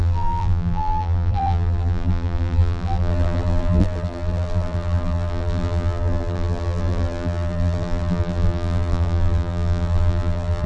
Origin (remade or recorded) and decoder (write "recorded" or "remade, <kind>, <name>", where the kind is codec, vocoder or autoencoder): remade, vocoder, BigVGAN v2